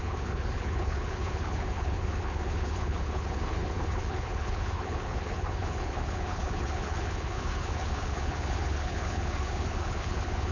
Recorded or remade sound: remade